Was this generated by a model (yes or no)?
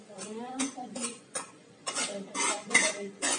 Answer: yes